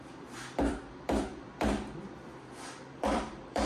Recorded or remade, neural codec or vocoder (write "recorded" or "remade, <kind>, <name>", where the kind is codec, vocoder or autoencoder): remade, vocoder, BigVGAN v2